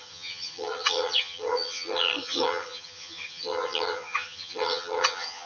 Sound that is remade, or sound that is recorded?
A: remade